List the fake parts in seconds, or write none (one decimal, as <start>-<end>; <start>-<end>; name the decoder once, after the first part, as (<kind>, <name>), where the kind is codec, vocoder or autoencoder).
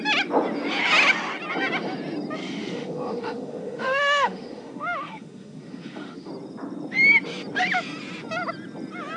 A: 2.4-6.3 (autoencoder, DAC-VAE)